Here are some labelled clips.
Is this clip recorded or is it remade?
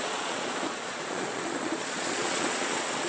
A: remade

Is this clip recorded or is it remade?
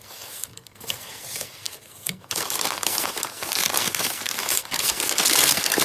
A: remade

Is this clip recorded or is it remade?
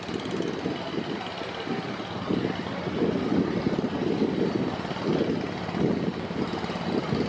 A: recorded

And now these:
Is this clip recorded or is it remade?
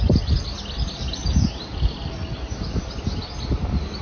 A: recorded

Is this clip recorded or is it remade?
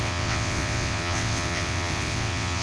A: remade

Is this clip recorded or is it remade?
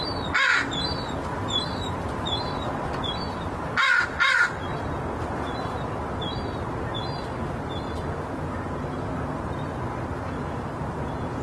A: recorded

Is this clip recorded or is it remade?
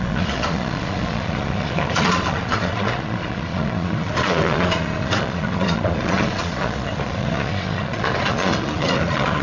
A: remade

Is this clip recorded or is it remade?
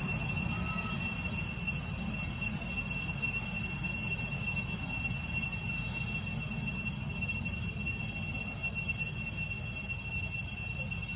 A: recorded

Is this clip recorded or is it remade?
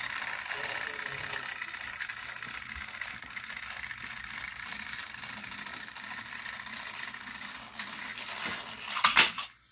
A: recorded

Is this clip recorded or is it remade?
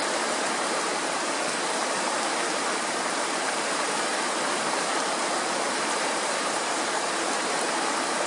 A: remade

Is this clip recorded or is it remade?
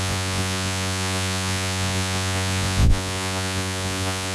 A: remade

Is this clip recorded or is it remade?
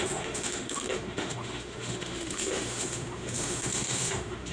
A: remade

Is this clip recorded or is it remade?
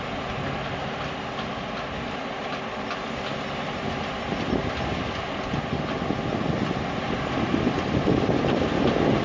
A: recorded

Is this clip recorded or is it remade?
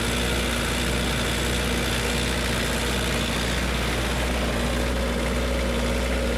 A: recorded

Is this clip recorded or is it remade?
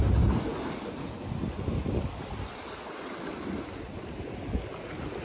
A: recorded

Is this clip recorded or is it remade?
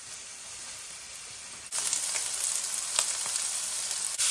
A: recorded